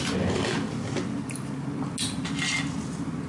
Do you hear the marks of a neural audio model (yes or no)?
no